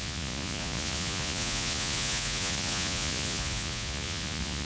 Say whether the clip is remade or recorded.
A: remade